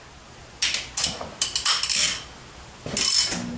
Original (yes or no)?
yes